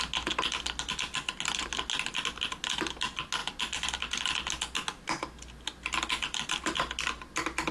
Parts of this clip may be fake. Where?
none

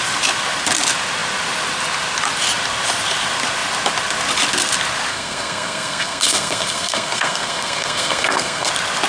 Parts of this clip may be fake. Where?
5.1-8.7 (codec, SNAC)

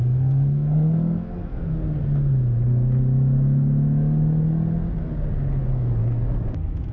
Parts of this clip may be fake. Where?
0.0-1.7 (codec, SNAC); 5.6-6.0

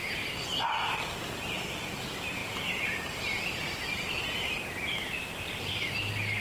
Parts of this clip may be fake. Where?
none

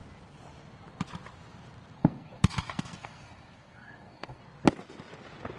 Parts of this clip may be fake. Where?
2.0-4.4 (codec, SNAC)

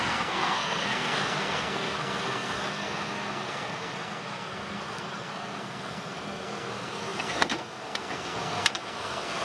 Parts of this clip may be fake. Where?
0.0-9.4 (codec, SNAC)

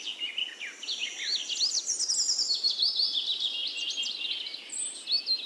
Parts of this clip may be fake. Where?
none